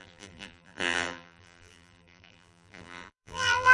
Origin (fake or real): fake